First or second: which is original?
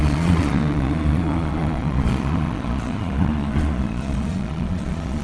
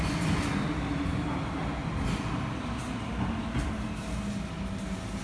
second